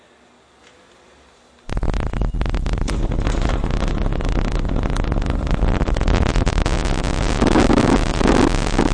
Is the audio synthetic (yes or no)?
no